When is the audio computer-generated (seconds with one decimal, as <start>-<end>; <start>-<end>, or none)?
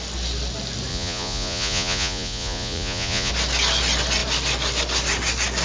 0.9-3.3